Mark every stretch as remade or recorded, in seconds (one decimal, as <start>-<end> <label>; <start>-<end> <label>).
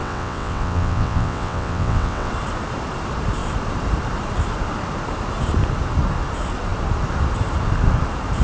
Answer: 0.0-2.3 remade; 2.3-8.4 recorded